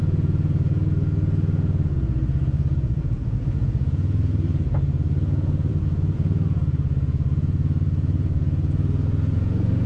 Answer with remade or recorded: remade